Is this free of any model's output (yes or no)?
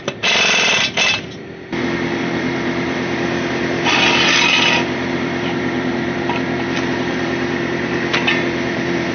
no